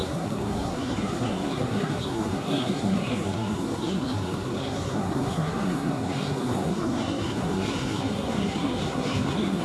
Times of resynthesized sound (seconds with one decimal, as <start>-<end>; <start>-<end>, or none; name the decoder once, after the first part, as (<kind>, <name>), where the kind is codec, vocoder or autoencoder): 0.0-9.6 (codec, SNAC)